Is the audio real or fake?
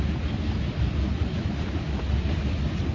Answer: real